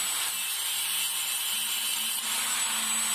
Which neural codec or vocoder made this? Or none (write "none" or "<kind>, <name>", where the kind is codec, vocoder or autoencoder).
none